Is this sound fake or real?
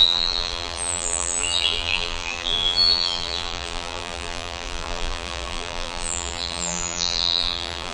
fake